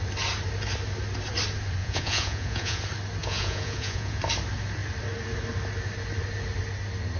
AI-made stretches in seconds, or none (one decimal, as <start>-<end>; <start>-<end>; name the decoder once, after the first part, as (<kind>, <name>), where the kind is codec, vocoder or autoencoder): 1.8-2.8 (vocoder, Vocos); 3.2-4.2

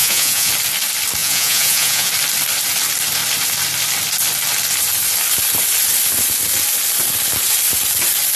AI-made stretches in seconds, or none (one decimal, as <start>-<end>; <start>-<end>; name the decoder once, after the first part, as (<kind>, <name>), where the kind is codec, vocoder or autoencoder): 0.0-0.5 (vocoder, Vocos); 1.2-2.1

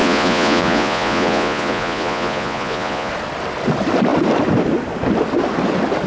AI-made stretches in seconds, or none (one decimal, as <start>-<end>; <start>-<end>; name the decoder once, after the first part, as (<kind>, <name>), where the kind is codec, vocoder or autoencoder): 0.0-3.1 (vocoder, Vocos)

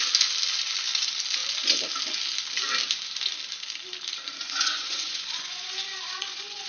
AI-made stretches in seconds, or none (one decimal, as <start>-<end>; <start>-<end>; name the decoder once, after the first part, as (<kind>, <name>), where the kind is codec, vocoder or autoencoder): 4.4-6.7 (vocoder, Vocos)